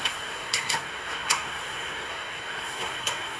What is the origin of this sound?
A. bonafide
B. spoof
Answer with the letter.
B